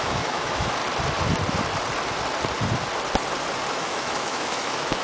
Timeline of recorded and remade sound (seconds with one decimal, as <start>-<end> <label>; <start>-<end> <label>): 0.0-0.8 remade; 0.8-3.7 recorded; 3.7-5.0 remade